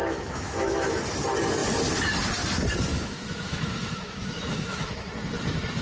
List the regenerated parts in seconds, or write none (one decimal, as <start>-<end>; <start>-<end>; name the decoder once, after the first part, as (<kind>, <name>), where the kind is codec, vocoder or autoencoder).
0.0-1.0 (autoencoder, DAC-VAE); 2.9-5.1